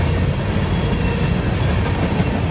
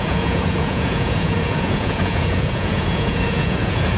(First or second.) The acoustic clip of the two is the first